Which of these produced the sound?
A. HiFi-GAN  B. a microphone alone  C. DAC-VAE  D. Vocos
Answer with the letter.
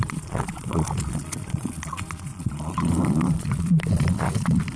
D